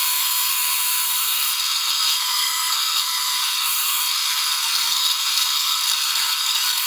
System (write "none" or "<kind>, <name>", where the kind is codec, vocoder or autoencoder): codec, SNAC